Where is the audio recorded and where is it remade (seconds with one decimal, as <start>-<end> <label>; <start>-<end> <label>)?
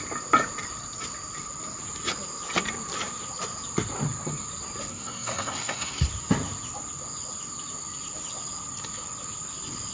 0.0-4.9 recorded; 4.9-6.1 remade; 6.1-9.9 recorded